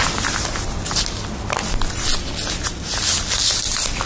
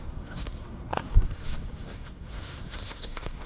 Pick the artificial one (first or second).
second